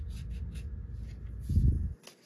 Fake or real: real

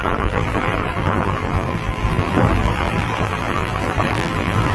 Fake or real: fake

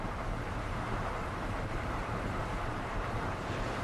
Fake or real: fake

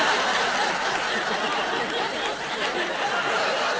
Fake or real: real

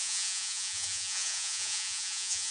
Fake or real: fake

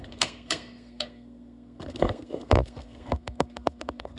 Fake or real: fake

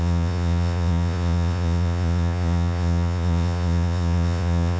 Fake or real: fake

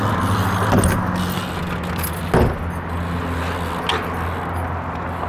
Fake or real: real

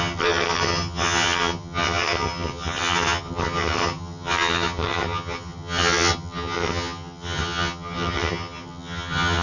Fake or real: fake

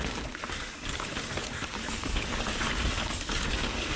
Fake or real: fake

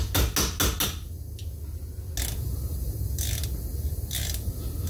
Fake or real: real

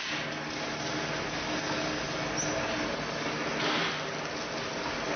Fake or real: real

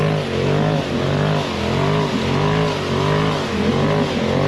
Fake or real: real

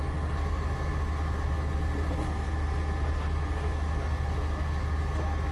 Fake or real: real